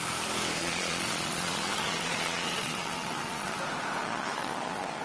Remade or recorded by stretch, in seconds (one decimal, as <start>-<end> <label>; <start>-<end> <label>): 0.0-0.6 recorded; 0.6-3.6 remade; 3.6-4.0 recorded; 4.0-5.0 remade